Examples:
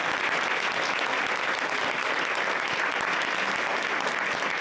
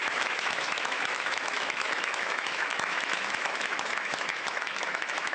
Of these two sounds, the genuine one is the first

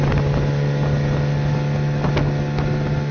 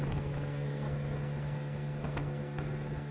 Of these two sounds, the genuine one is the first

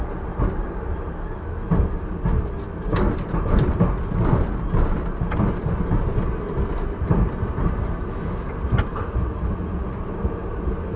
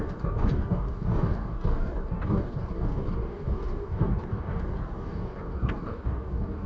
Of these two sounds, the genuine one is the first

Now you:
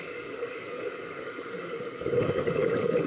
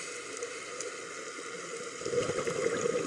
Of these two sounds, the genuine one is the second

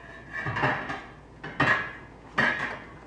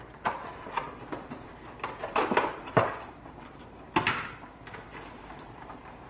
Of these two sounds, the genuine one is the first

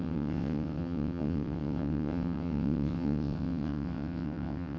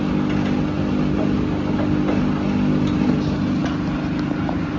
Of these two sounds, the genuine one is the second